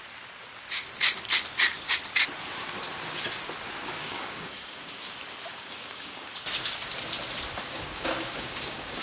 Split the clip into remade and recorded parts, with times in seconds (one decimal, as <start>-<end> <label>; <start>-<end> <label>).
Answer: 0.0-4.0 recorded; 4.0-5.0 remade; 5.0-5.5 recorded; 5.5-6.3 remade; 6.3-7.7 recorded; 7.7-9.0 remade